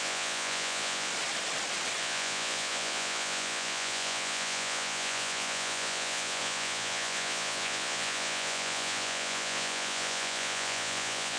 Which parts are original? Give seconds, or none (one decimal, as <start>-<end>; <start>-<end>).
1.1-2.0